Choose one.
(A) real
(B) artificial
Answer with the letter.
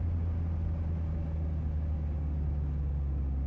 A